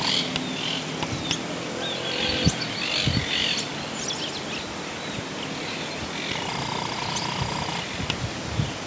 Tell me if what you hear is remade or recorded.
recorded